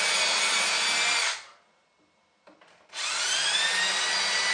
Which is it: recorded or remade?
recorded